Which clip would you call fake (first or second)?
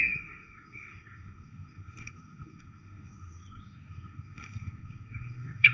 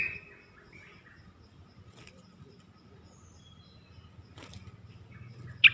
first